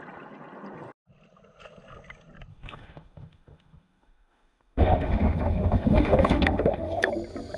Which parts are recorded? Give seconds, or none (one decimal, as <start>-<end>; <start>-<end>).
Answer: 0.0-2.5; 7.1-7.6